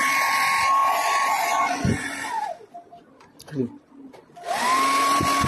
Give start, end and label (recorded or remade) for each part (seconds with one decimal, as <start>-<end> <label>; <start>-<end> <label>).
0.0-0.8 recorded; 0.8-2.4 remade; 2.4-5.5 recorded